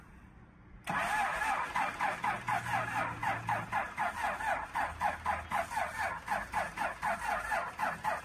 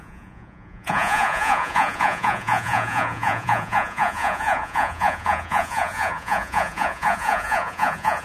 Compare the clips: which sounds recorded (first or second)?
first